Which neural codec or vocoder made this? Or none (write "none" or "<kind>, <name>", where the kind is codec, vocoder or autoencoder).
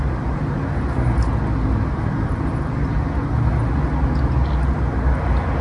none